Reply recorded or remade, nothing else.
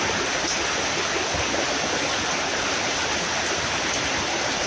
recorded